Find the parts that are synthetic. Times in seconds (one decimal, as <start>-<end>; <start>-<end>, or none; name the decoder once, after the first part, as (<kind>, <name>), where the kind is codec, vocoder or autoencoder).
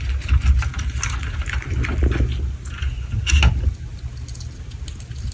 none